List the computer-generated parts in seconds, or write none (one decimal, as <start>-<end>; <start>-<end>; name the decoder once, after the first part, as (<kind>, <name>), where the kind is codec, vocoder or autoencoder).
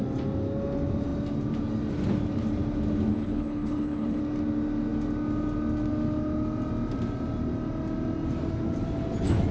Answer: 3.1-4.2 (codec, HILCodec)